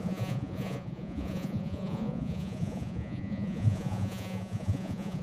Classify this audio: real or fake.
fake